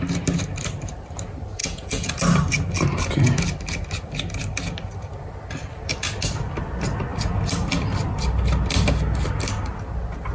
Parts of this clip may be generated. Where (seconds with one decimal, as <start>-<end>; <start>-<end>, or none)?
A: 1.6-2.1